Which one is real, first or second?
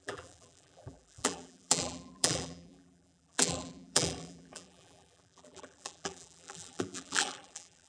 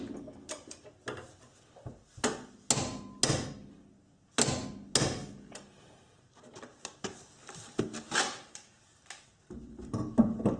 second